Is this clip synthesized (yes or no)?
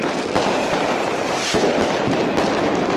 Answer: no